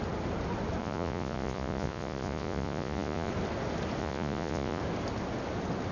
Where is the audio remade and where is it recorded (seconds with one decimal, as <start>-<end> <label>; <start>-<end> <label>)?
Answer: 0.0-0.8 recorded; 0.8-3.3 remade; 3.3-4.0 recorded; 4.0-4.8 remade; 4.8-5.9 recorded